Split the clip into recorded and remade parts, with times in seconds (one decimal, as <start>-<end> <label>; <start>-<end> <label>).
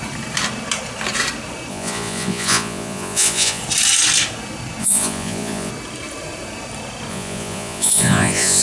0.0-1.7 recorded; 1.7-3.6 remade; 3.6-4.8 recorded; 4.8-5.7 remade; 5.7-7.1 recorded; 7.1-8.6 remade